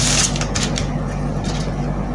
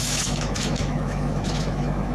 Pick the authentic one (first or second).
first